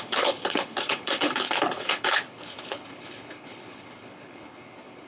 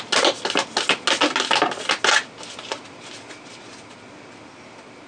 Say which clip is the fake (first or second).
first